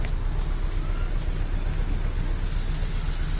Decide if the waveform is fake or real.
real